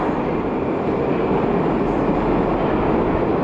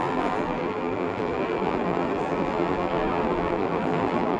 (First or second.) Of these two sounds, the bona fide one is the first